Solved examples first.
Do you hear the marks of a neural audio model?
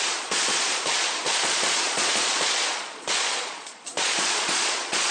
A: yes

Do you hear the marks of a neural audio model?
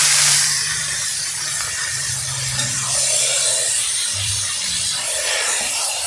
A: yes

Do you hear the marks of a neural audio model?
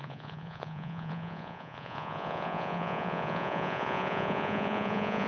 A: yes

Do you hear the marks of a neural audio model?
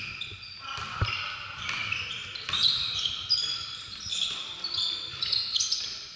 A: no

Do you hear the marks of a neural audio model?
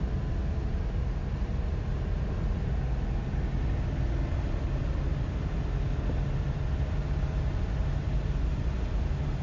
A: no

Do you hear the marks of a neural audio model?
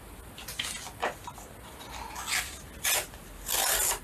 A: no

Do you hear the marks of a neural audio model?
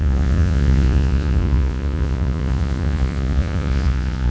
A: yes